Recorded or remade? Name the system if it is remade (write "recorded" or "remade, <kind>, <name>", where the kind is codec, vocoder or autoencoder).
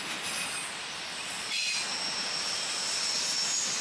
recorded